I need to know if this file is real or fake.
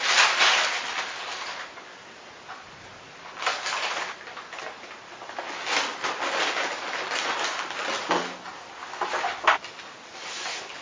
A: real